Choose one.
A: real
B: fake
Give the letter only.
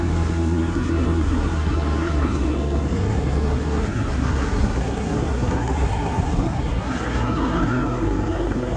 B